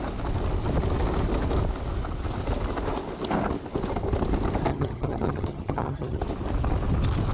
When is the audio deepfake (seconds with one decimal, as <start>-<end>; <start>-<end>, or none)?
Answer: 4.7-6.2